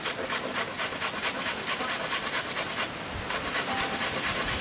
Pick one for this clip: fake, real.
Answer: real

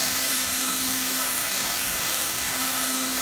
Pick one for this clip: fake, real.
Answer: fake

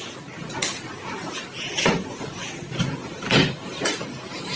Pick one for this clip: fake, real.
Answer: real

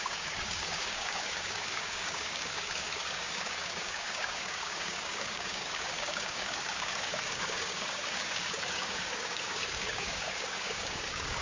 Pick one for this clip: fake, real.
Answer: fake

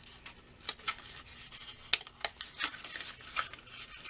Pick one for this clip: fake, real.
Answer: real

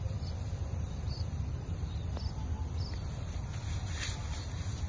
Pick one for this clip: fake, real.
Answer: real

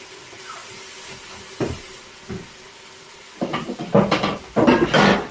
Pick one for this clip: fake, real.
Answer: real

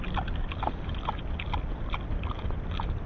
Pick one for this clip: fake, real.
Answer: real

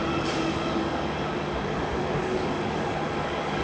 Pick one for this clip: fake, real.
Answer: fake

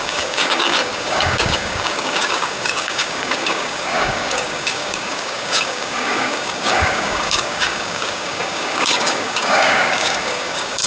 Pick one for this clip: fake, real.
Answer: fake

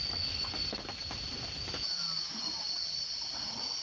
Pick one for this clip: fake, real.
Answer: real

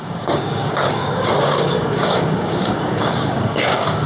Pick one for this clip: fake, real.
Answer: fake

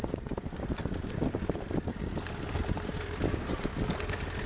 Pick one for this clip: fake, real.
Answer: real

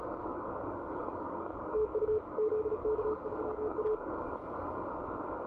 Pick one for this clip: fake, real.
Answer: fake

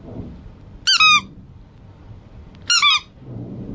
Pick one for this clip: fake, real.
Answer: real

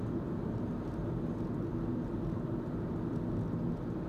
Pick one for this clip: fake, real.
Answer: real